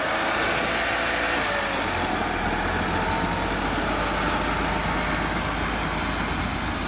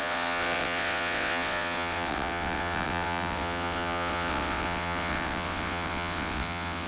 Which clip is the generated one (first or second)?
second